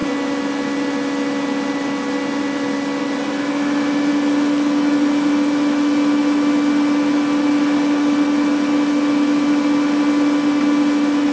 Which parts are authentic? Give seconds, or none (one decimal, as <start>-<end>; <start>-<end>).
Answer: 0.0-11.3